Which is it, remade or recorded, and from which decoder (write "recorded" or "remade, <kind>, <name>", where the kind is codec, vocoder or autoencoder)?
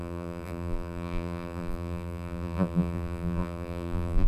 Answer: remade, vocoder, BigVGAN v2